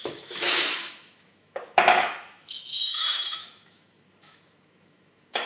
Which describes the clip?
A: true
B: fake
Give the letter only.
B